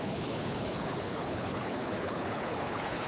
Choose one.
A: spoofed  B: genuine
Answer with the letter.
A